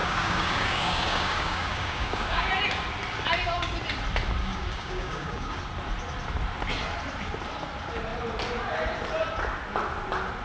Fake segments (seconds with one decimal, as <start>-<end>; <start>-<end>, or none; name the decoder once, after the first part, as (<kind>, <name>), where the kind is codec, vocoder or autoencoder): 0.0-2.5 (codec, DAC); 4.4-5.6